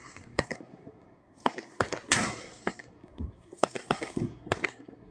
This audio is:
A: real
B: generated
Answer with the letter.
B